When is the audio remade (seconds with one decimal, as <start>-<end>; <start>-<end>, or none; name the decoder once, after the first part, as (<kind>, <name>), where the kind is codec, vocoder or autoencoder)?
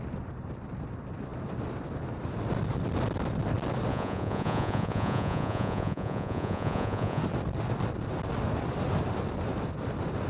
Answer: 3.9-7.2 (vocoder, Vocos)